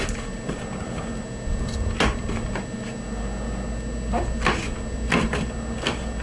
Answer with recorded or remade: recorded